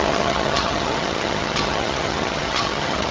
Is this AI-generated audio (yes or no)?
yes